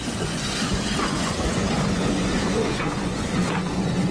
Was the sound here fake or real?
fake